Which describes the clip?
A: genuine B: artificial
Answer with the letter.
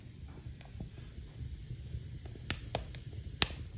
A